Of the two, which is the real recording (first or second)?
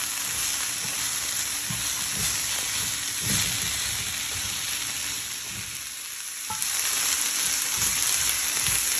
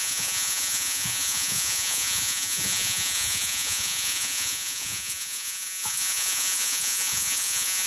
first